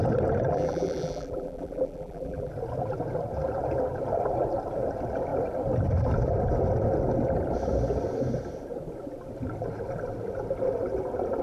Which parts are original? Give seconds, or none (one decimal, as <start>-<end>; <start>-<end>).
0.0-0.5; 2.5-11.4